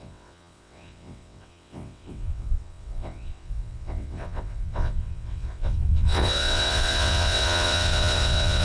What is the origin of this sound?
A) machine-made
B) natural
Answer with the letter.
A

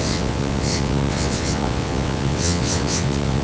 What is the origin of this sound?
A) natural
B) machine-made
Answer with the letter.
B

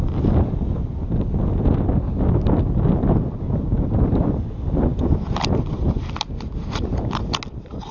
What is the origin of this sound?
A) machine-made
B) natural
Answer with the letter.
B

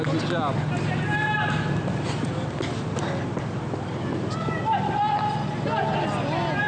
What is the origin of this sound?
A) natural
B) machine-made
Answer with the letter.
A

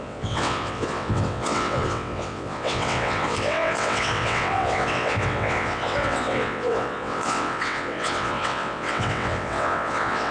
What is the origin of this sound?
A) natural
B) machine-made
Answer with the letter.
B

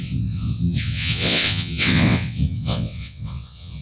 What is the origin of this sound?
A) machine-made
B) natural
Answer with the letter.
A